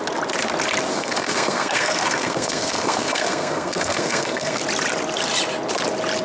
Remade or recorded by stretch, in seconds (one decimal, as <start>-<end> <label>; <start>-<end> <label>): 0.0-0.9 recorded; 0.9-4.6 remade; 4.6-6.2 recorded